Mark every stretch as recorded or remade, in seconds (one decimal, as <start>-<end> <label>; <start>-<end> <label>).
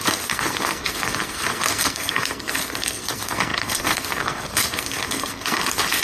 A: 0.0-6.0 remade